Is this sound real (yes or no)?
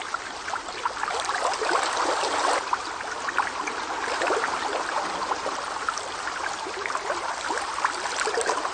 no